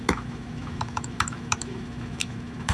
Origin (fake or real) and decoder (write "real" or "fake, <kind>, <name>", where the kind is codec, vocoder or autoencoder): fake, autoencoder, DAC-VAE